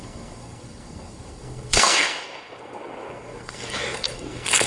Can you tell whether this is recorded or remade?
remade